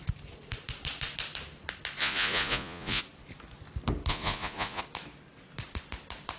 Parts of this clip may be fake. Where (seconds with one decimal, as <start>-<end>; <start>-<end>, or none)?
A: 2.0-3.0; 4.1-4.8